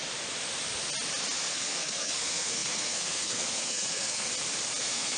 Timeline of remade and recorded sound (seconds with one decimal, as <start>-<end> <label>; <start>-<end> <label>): 0.0-1.5 recorded; 1.5-4.3 remade; 4.3-4.8 recorded; 4.8-5.2 remade